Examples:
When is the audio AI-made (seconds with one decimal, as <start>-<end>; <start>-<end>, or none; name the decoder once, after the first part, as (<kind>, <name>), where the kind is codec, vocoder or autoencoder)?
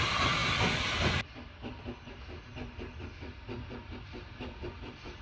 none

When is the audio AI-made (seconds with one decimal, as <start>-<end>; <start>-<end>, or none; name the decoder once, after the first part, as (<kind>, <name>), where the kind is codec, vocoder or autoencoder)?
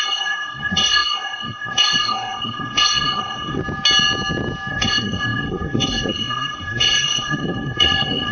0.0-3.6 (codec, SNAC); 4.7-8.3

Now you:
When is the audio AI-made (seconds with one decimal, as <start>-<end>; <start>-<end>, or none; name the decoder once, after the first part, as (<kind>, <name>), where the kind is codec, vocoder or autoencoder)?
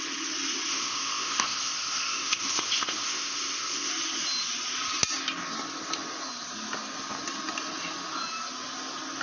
0.7-3.9 (codec, ZipCodec)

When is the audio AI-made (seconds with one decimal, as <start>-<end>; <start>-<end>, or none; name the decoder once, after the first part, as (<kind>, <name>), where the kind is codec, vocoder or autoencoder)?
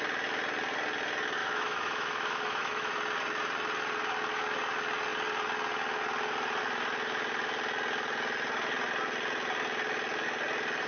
1.4-2.9 (autoencoder, DAC-VAE)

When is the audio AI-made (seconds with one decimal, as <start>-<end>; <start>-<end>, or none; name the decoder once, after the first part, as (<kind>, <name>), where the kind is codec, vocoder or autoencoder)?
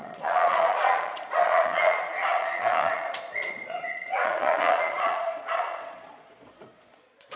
0.0-7.4 (vocoder, Vocos)